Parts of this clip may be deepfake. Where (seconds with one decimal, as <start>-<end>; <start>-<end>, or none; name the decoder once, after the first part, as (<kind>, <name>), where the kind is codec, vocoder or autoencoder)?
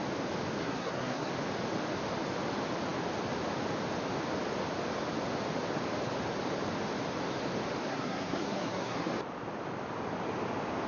0.6-1.3 (codec, SNAC); 7.9-9.1